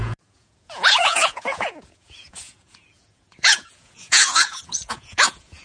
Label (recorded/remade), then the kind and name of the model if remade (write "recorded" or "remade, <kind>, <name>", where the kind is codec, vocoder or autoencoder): remade, vocoder, Vocos